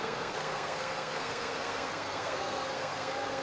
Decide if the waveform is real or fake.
fake